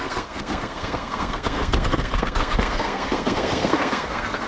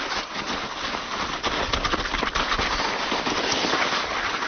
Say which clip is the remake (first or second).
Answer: first